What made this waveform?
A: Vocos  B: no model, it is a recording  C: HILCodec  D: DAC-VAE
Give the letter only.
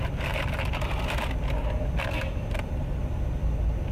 B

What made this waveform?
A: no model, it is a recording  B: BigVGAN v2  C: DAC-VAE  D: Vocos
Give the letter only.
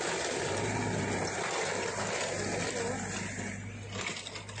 A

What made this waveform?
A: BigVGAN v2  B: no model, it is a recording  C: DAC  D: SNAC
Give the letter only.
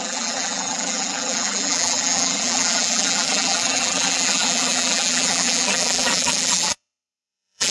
A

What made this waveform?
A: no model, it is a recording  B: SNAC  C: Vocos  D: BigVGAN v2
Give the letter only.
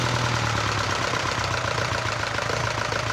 A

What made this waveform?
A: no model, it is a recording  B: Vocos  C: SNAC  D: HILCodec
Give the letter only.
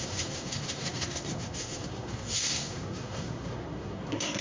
C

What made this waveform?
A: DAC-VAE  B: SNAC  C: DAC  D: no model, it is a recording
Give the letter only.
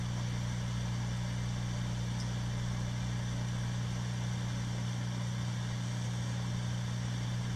D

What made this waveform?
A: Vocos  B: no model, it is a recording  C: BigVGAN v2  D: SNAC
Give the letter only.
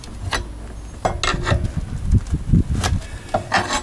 B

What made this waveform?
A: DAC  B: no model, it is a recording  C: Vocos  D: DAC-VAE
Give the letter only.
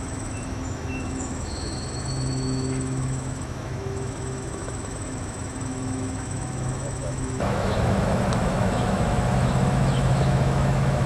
D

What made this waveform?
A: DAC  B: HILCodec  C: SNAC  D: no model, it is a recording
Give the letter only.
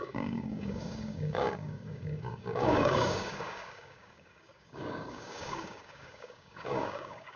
A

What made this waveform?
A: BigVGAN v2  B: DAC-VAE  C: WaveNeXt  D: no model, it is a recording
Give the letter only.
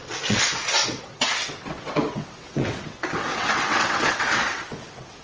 C